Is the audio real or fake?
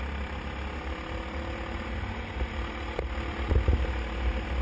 real